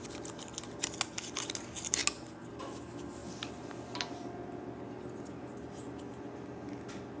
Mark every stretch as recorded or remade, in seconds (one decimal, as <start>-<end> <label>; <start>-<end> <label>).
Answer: 0.0-7.2 recorded